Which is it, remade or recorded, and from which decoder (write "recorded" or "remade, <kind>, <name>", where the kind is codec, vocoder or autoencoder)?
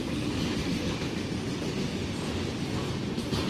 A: recorded